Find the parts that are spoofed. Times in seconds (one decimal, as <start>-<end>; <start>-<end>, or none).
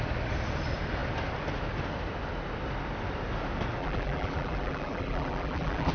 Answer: 3.8-5.9